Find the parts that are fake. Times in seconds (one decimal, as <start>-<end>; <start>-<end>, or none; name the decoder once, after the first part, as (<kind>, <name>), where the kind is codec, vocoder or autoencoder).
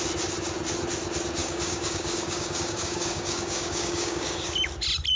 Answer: 1.4-4.5 (codec, DAC)